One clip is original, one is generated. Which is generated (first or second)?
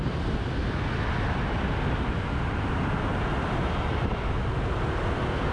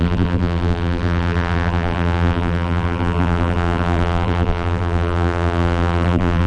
second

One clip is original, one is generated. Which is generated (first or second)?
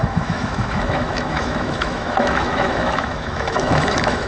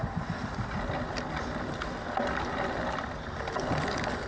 first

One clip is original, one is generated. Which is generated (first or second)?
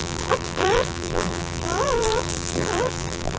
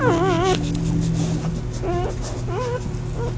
first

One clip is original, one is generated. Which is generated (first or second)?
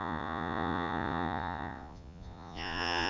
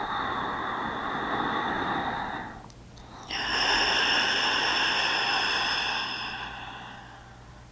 first